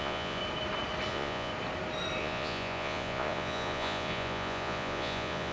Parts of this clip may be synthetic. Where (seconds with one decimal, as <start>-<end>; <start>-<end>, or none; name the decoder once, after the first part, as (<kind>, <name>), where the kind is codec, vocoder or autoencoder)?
0.0-0.4 (vocoder, Vocos); 1.1-1.5; 2.2-5.5